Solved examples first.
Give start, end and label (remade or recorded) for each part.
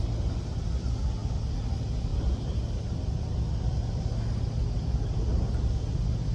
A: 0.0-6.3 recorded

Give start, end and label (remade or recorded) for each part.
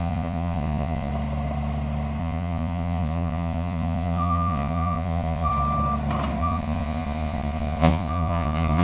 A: 0.0-1.1 remade; 1.1-2.2 recorded; 2.2-5.5 remade; 5.5-6.4 recorded; 6.4-8.8 remade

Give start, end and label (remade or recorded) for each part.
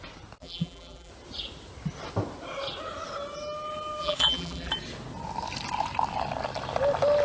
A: 0.0-0.4 recorded; 0.4-1.1 remade; 1.1-4.0 recorded; 4.0-4.7 remade; 4.7-7.2 recorded